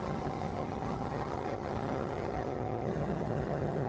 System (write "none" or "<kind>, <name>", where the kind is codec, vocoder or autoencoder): vocoder, HiFi-GAN